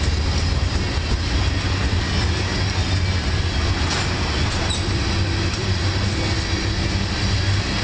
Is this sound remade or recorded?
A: recorded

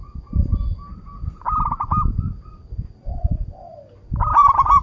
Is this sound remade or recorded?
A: recorded